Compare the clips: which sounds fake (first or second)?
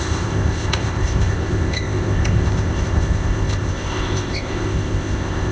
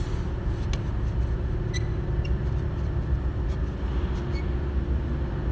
first